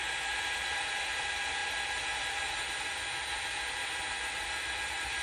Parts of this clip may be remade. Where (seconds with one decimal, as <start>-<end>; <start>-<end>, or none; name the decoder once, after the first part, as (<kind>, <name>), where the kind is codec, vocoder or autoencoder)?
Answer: none